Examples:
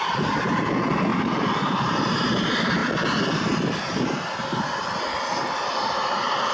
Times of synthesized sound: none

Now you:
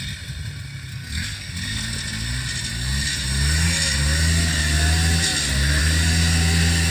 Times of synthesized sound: 0.9-1.5 (codec, SNAC)